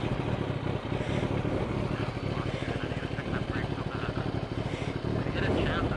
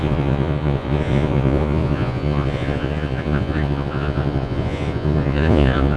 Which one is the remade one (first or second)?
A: second